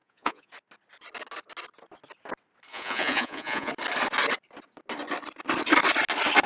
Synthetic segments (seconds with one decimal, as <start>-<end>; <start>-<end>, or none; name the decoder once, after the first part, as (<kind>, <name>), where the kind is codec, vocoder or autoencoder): 0.0-0.5 (vocoder, Vocos); 2.7-3.7